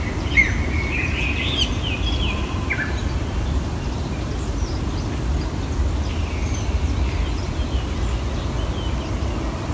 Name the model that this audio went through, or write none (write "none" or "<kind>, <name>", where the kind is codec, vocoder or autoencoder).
none